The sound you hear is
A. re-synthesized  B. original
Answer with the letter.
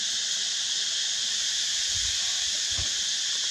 B